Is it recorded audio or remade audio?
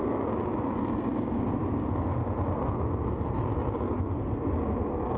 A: recorded